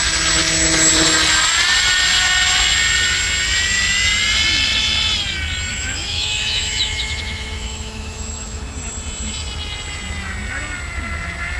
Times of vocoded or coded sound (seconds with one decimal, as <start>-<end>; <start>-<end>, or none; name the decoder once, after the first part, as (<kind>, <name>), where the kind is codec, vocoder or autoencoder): 5.7-8.6 (autoencoder, DAC-VAE)